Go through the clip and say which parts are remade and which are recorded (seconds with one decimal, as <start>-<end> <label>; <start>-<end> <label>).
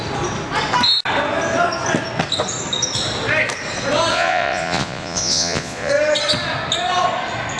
0.0-4.1 recorded; 4.1-5.9 remade; 5.9-7.6 recorded